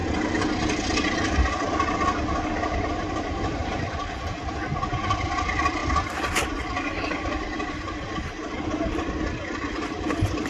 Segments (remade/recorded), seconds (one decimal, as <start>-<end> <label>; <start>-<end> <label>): 0.0-10.5 recorded